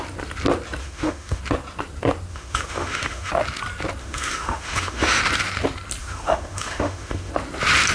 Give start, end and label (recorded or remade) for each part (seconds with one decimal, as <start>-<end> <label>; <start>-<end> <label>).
0.0-0.8 recorded; 0.8-1.4 remade; 1.4-2.3 recorded; 2.3-3.3 remade; 3.3-4.0 recorded; 4.0-5.2 remade; 5.2-6.0 recorded; 6.0-7.3 remade; 7.3-7.9 recorded